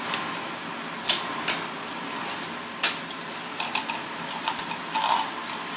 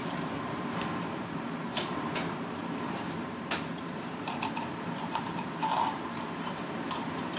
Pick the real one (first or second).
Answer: first